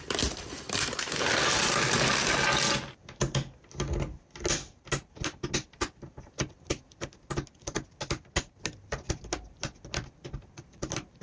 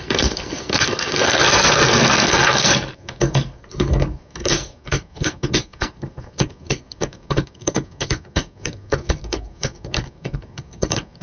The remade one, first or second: second